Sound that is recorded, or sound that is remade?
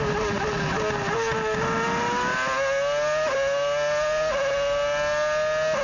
recorded